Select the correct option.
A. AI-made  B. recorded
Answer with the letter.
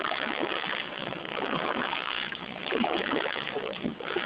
A